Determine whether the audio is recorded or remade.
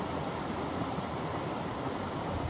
recorded